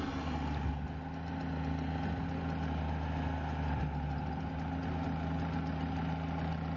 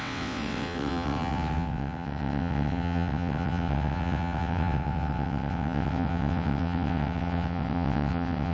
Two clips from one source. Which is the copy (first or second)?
second